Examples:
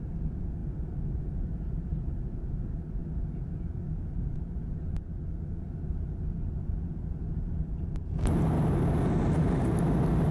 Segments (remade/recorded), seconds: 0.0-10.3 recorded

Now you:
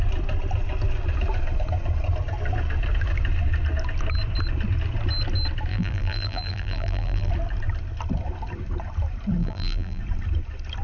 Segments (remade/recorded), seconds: 0.0-5.7 recorded; 5.7-7.3 remade; 7.3-9.4 recorded; 9.4-10.0 remade; 10.0-10.8 recorded

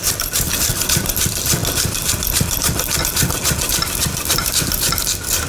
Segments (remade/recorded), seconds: 0.0-1.6 remade; 1.6-3.0 recorded; 3.0-5.5 remade

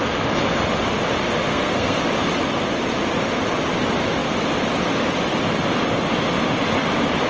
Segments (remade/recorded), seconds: 0.0-1.5 recorded; 1.5-2.0 remade; 2.0-7.3 recorded